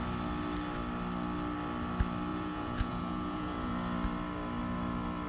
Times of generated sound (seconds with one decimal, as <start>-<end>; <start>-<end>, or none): 2.3-3.7